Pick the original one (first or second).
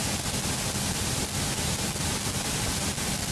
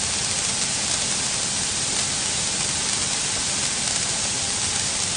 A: first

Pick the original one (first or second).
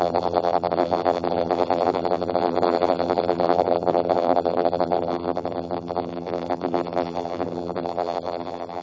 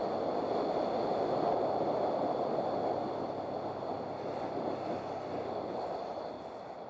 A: second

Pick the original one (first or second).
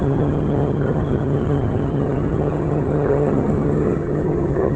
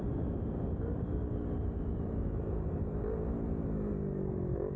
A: second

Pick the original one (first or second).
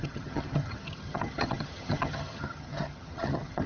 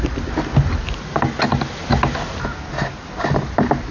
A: second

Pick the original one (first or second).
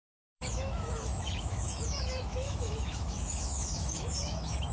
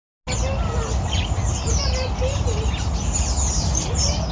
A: second